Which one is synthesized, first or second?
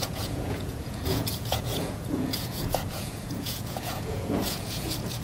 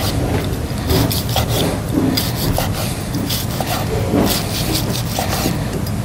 first